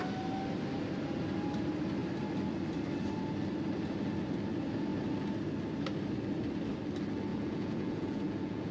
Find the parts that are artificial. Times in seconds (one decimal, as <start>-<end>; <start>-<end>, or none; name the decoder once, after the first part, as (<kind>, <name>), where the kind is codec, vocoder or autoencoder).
7.3-8.7 (vocoder, Vocos)